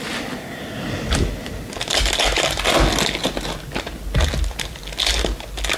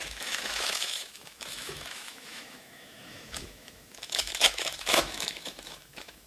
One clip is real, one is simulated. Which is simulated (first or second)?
second